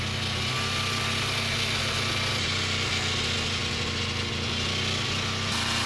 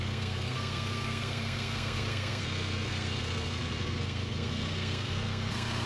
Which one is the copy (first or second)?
second